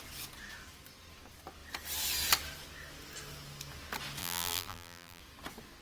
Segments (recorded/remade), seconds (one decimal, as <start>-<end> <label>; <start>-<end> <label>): 0.0-4.2 recorded; 4.2-5.2 remade; 5.2-5.8 recorded